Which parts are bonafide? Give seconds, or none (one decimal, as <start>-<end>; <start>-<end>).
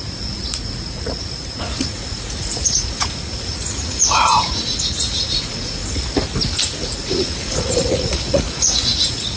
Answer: 5.8-6.6